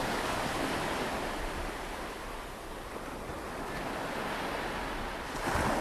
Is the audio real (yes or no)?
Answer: yes